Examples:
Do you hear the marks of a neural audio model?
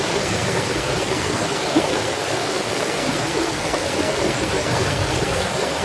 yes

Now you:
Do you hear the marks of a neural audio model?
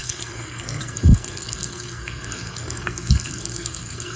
yes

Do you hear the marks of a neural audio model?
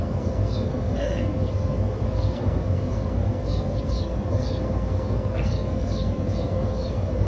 yes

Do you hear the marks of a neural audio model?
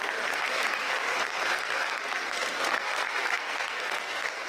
yes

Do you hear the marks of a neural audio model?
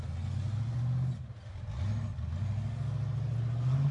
no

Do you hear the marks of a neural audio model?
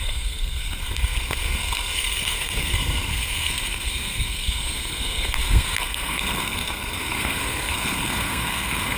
yes